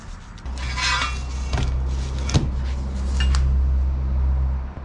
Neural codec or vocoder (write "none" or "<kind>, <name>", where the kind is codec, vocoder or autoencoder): none